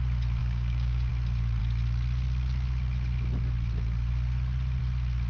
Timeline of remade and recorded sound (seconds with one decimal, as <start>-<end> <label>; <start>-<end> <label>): 0.0-0.4 recorded; 0.4-1.1 remade; 1.1-5.3 recorded